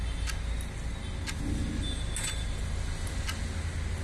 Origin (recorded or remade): recorded